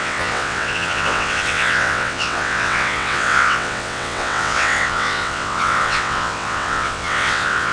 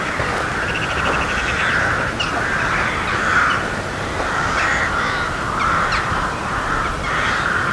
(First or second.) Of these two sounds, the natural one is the second